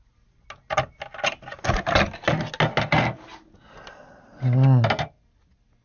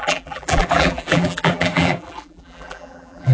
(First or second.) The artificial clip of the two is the second